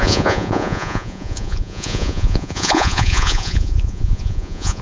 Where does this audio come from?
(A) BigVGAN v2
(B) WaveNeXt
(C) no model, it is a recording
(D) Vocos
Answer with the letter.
D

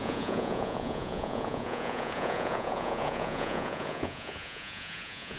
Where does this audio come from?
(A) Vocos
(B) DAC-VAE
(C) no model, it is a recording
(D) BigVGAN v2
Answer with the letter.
A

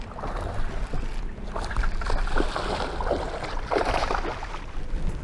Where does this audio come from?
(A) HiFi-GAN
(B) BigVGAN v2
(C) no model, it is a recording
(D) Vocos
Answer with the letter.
C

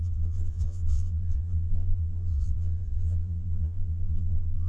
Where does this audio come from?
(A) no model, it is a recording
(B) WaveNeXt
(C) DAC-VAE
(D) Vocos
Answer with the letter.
D